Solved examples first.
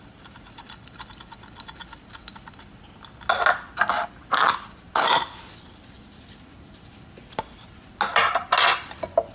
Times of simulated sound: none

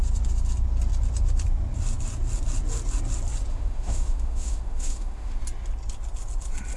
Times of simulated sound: 3.5-5.4